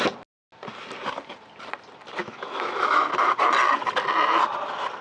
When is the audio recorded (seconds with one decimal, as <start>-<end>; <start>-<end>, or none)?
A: 0.0-2.2; 3.3-5.0